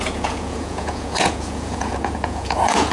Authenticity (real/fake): fake